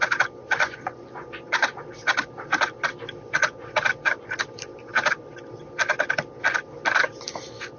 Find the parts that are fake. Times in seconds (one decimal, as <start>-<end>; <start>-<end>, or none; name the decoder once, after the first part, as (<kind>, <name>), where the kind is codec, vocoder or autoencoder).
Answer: 0.6-1.8 (vocoder, Vocos)